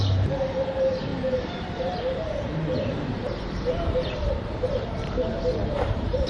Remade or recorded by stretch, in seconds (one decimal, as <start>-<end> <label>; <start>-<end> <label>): 0.0-6.3 remade